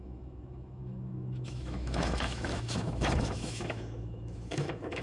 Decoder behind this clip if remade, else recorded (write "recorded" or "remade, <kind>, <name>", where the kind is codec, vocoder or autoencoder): remade, autoencoder, DAC-VAE